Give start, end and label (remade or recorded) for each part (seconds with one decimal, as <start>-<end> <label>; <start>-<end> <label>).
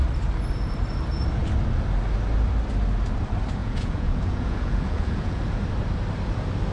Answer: 0.0-3.6 recorded; 3.6-5.4 remade; 5.4-6.7 recorded